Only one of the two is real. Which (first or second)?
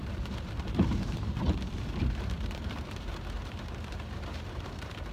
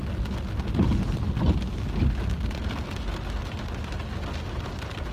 second